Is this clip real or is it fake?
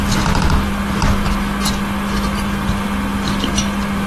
real